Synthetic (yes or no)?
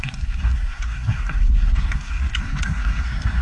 yes